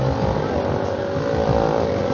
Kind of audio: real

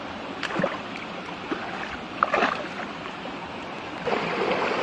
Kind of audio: real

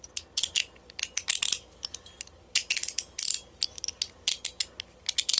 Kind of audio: real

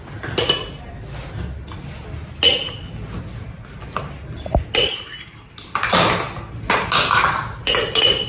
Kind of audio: real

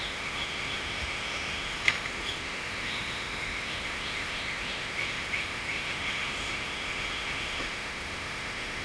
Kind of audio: fake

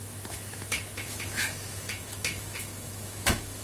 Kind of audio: fake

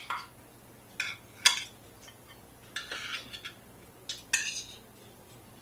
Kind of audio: real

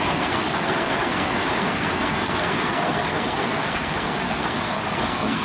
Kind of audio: fake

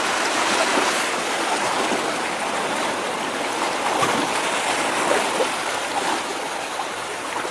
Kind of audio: real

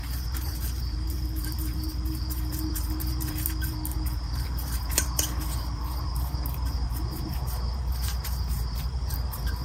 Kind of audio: fake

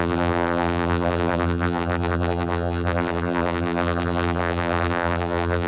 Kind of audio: fake